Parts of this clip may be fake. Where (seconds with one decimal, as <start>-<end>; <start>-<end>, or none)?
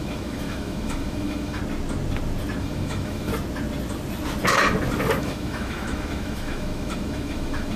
0.0-1.6; 2.6-3.3; 5.2-7.8